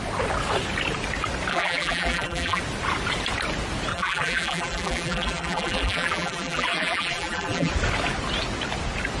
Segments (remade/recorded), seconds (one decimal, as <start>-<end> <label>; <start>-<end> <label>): 0.0-1.5 recorded; 1.5-2.6 remade; 2.6-3.9 recorded; 3.9-7.7 remade; 7.7-9.2 recorded